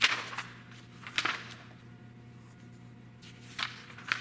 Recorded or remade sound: recorded